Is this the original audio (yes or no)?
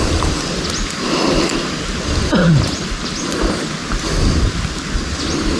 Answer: yes